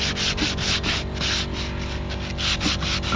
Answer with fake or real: real